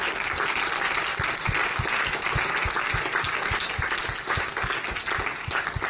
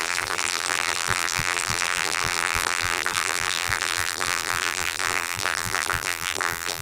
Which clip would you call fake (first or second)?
second